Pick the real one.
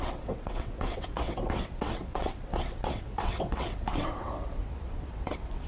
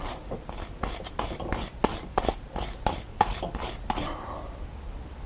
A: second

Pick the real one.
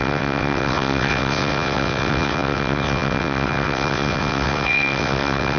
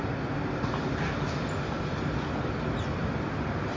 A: second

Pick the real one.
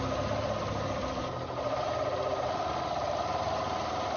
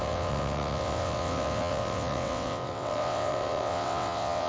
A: first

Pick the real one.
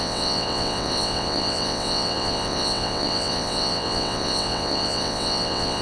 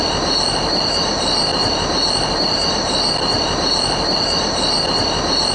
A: second